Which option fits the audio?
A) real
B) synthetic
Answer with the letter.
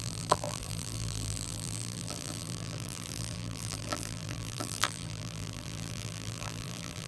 B